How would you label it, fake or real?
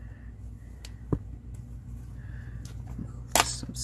real